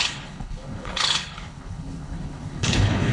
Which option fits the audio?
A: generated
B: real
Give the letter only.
A